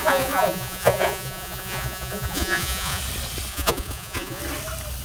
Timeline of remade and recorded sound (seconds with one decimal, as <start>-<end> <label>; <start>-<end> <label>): 0.0-3.0 remade; 3.0-3.5 recorded; 3.5-4.4 remade; 4.4-5.0 recorded